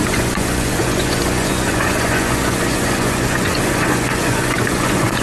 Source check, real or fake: fake